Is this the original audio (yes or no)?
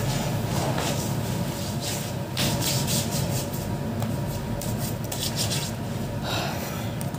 yes